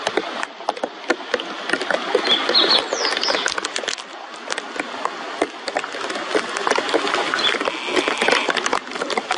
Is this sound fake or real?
real